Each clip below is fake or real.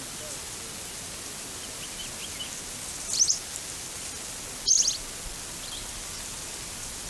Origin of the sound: real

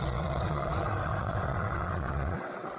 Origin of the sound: fake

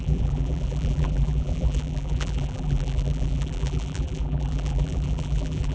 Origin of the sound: fake